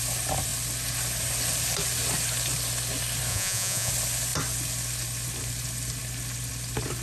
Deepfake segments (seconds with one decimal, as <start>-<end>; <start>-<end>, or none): 3.3-3.9